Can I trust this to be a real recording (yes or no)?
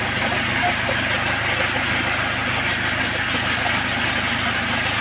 yes